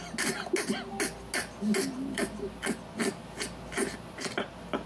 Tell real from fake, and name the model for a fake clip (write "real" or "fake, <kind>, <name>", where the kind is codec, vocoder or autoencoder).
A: real